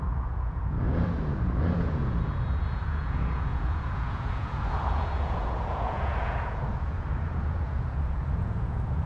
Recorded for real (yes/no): no